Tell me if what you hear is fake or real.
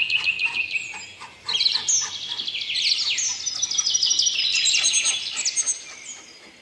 real